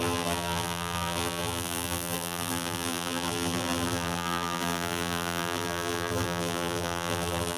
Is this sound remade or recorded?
remade